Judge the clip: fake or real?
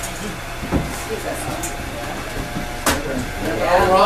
real